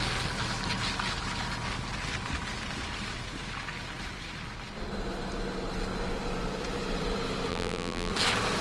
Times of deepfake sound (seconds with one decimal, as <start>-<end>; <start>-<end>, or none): 7.5-8.1